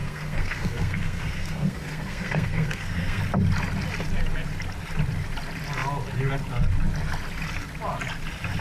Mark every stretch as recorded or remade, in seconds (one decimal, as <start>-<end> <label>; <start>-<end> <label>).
0.0-3.2 remade; 3.2-8.6 recorded